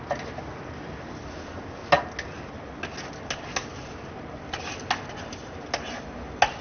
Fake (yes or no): no